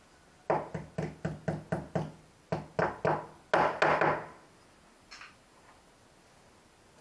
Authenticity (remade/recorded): recorded